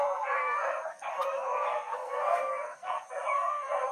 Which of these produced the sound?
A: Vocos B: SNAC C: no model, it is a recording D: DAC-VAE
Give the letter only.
B